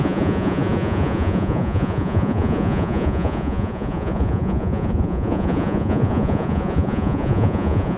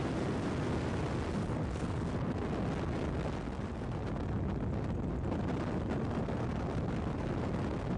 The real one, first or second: second